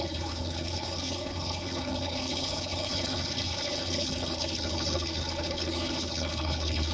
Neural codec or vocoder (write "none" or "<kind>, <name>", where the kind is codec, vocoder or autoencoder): codec, HILCodec